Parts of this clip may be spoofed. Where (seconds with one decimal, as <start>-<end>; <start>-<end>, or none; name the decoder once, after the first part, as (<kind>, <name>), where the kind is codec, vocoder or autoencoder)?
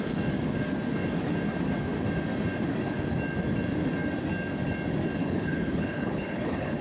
5.2-6.8 (codec, HILCodec)